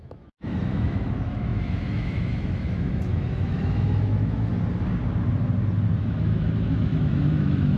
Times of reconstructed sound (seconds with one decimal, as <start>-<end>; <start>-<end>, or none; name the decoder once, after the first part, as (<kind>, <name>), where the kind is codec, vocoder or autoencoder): 0.0-4.5 (autoencoder, DAC-VAE); 6.0-7.8